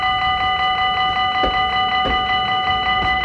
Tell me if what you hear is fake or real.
real